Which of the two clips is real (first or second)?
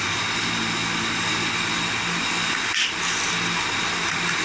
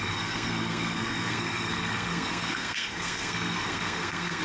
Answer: first